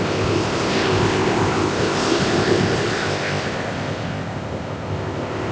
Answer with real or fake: fake